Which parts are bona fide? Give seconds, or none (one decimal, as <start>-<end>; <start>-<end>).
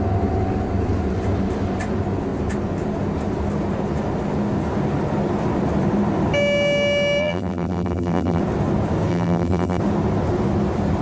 0.0-7.2; 8.4-9.1; 9.8-11.0